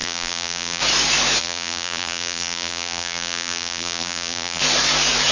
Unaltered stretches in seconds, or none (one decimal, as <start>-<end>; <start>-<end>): 0.8-1.4; 4.6-5.3